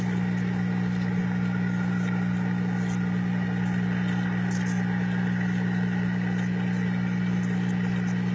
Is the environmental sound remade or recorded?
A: recorded